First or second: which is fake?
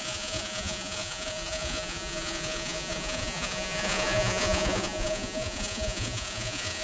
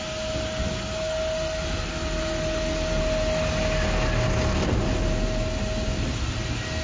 first